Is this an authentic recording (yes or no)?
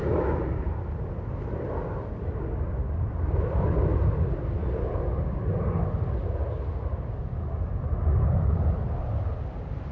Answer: yes